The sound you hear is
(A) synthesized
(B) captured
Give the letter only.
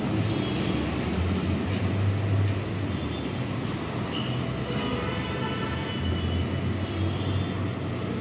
B